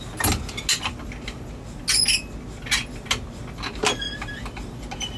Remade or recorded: recorded